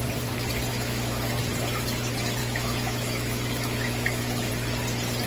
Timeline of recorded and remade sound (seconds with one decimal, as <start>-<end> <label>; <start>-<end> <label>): 0.0-0.7 recorded; 0.7-1.3 remade; 1.3-2.4 recorded; 2.4-4.5 remade; 4.5-5.3 recorded